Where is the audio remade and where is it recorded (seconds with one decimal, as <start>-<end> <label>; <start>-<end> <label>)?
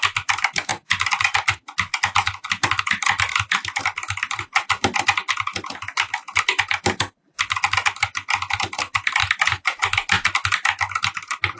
0.0-3.3 recorded; 3.3-3.8 remade; 3.8-9.2 recorded; 9.2-9.8 remade; 9.8-11.6 recorded